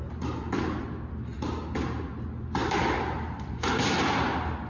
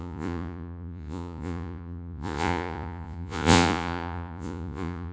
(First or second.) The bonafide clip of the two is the first